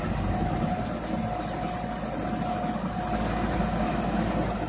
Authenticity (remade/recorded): recorded